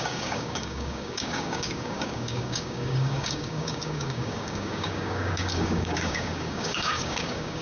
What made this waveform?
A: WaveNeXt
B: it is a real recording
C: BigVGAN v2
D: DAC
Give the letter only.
D